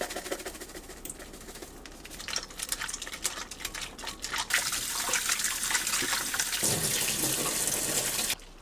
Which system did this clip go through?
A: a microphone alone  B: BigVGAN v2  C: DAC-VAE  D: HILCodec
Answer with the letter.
A